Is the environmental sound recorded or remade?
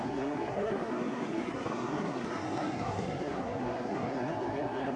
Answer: remade